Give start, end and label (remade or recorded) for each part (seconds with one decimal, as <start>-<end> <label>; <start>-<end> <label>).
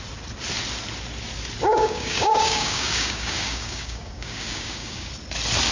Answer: 0.0-1.7 recorded; 1.7-5.1 remade; 5.1-5.7 recorded